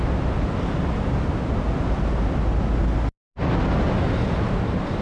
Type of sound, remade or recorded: recorded